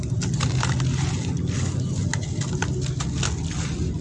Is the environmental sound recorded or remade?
recorded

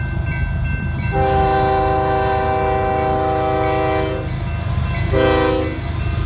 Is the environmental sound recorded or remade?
recorded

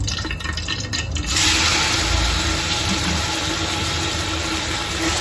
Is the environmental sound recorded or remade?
recorded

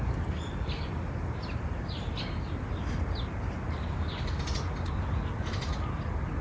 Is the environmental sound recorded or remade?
recorded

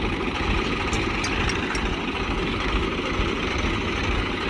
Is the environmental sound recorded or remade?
recorded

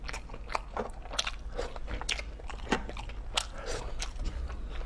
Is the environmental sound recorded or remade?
recorded